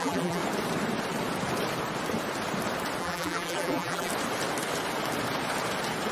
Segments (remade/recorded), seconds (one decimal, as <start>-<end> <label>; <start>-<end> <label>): 0.0-0.4 remade; 0.4-3.0 recorded; 3.0-4.1 remade; 4.1-6.1 recorded